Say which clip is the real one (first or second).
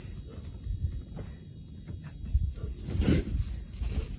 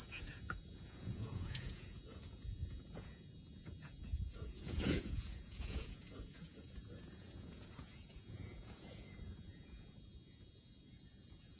first